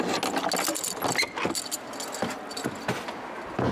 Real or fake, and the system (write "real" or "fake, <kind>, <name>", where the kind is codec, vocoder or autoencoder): real